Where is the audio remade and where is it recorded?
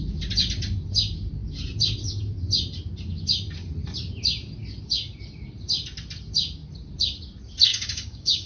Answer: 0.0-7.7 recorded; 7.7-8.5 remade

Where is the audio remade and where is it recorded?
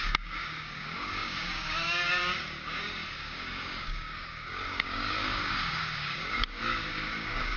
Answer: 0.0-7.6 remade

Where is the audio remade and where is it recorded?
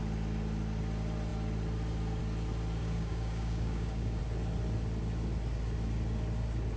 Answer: 0.0-2.8 recorded; 2.8-4.2 remade; 4.2-6.8 recorded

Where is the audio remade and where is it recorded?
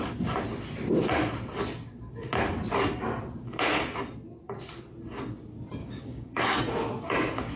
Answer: 0.0-5.8 recorded; 5.8-6.6 remade; 6.6-7.6 recorded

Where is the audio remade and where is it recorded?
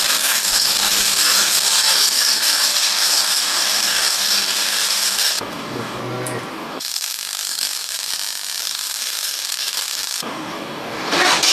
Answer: 0.0-6.0 remade; 6.0-6.5 recorded; 6.5-8.1 remade; 8.1-8.6 recorded; 8.6-11.5 remade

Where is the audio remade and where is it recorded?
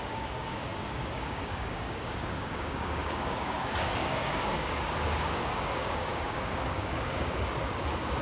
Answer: 0.0-8.2 remade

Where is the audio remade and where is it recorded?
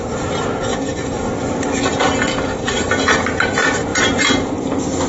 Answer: 0.0-0.7 recorded; 0.7-1.3 remade; 1.3-2.3 recorded; 2.3-2.9 remade; 2.9-5.1 recorded